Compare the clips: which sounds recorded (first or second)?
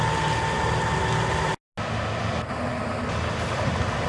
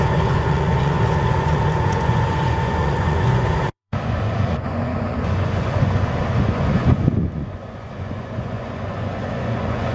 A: first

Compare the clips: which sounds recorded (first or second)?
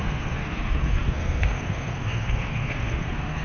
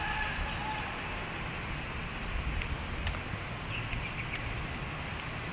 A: second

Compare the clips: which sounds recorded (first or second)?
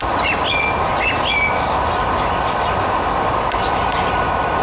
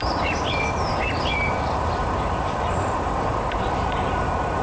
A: first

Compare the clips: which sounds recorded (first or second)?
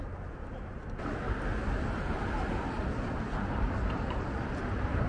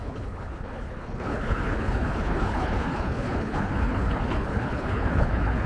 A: first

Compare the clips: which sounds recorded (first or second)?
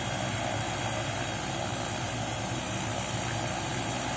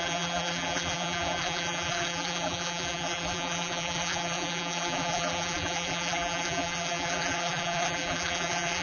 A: first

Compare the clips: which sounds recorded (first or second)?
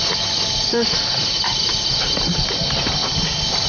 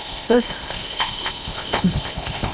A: first